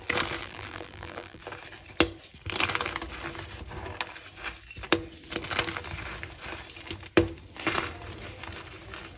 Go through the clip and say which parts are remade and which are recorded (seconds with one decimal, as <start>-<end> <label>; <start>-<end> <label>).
0.0-0.4 recorded; 0.4-1.4 remade; 1.4-9.2 recorded